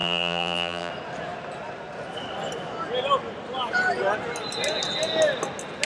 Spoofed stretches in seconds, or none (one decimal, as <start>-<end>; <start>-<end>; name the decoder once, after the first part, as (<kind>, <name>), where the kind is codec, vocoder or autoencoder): 0.0-0.9 (vocoder, BigVGAN v2)